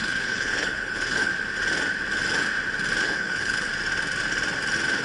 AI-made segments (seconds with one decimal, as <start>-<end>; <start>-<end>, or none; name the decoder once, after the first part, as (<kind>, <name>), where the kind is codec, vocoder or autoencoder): 0.0-1.3 (codec, HILCodec); 3.0-3.7